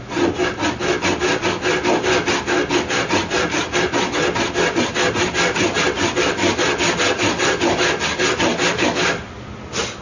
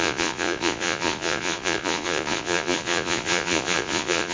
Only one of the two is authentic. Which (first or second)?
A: first